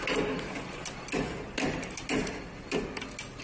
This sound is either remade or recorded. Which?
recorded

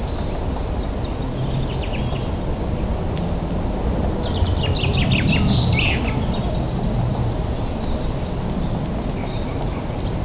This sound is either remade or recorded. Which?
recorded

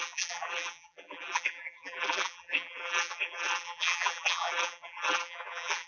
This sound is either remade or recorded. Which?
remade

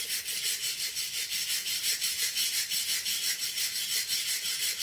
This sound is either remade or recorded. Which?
recorded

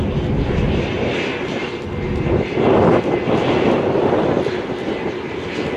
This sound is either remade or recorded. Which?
recorded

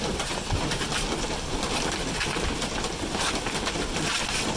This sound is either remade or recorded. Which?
remade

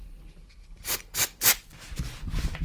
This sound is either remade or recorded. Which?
recorded